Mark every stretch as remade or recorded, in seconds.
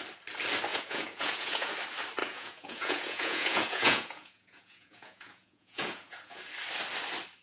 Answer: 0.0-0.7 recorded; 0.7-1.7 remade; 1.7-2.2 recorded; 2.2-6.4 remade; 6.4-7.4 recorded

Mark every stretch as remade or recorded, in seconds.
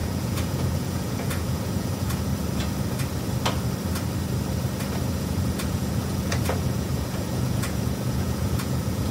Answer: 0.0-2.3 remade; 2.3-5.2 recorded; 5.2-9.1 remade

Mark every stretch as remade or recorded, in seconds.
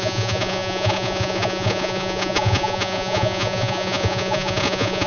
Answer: 0.0-5.1 remade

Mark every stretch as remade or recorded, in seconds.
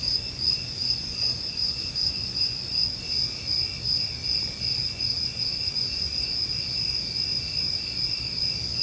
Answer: 0.0-2.6 remade; 2.6-4.8 recorded; 4.8-6.3 remade; 6.3-8.8 recorded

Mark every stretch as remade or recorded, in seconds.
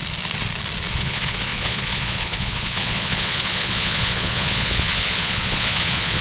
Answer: 0.0-0.9 recorded; 0.9-6.2 remade